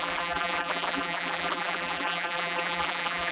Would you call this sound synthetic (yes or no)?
yes